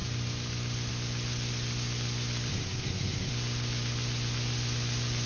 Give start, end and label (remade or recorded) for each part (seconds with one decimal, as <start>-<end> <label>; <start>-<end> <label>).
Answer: 0.0-2.5 recorded; 2.5-3.3 remade; 3.3-5.3 recorded